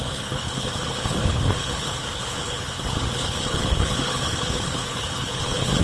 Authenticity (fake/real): fake